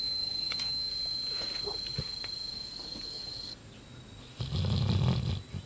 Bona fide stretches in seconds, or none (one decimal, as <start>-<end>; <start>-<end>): 0.9-2.5; 3.6-5.7